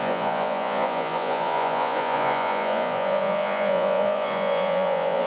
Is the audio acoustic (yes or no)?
no